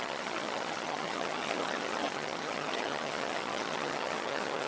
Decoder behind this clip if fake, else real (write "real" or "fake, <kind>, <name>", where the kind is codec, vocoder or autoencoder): fake, vocoder, HiFi-GAN